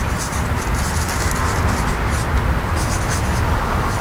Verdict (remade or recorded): recorded